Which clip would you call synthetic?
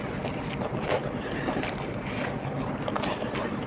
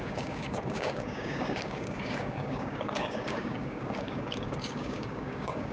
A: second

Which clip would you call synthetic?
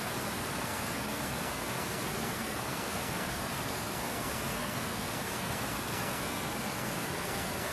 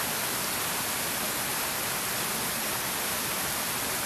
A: first